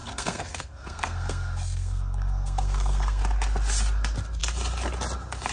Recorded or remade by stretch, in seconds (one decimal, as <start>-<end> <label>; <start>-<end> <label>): 0.0-3.2 remade; 3.2-5.5 recorded